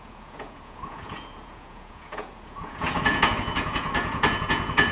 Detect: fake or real fake